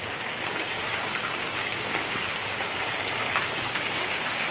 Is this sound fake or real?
fake